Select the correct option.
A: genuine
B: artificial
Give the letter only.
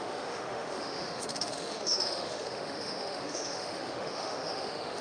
B